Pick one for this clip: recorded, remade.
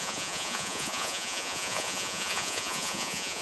remade